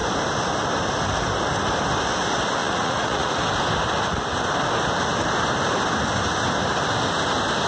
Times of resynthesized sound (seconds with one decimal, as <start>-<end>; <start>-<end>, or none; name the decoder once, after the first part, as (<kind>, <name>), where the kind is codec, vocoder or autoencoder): 2.6-3.4 (vocoder, Vocos)